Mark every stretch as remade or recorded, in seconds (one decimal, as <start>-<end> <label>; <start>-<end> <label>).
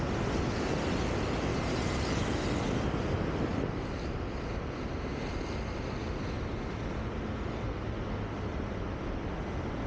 0.0-1.5 recorded; 1.5-2.2 remade; 2.2-9.9 recorded